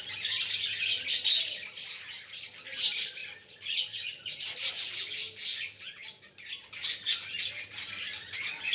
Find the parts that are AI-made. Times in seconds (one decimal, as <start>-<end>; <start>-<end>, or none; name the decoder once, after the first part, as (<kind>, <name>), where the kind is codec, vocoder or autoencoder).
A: 3.2-4.7 (vocoder, BigVGAN v2)